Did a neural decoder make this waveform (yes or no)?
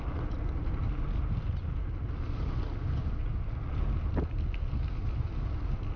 no